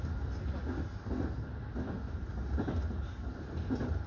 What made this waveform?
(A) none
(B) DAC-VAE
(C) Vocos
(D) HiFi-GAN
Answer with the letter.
A